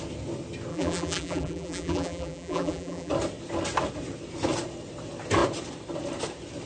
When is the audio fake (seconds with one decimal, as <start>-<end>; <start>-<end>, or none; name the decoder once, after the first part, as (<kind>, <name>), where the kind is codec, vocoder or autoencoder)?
0.7-3.1 (vocoder, BigVGAN v2)